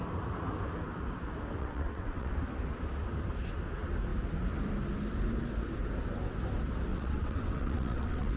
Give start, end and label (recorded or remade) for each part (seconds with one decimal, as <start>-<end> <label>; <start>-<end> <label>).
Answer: 0.0-1.6 recorded; 1.6-2.3 remade; 2.3-6.9 recorded; 6.9-8.4 remade

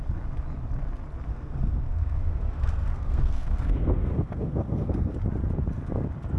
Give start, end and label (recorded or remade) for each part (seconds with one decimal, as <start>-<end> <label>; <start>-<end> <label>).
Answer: 0.0-1.3 recorded; 1.3-5.1 remade; 5.1-6.4 recorded

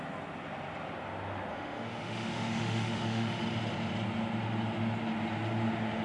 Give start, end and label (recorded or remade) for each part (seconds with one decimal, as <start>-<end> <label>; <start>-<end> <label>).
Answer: 0.0-1.5 recorded; 1.5-3.4 remade; 3.4-6.0 recorded